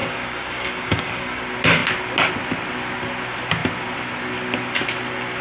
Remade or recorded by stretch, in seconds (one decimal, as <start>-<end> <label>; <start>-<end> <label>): 0.0-1.4 remade; 1.4-5.4 recorded